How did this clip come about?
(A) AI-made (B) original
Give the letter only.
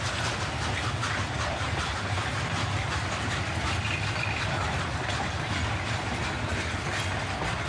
B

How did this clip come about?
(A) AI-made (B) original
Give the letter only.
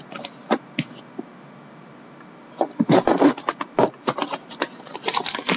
B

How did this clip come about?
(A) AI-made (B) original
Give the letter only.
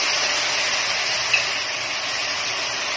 B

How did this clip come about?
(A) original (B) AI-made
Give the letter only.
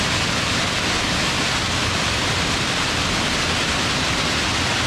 A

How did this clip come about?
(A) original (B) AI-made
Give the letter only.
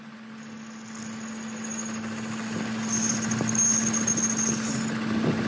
A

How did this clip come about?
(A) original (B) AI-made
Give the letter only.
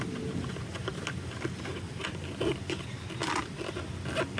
A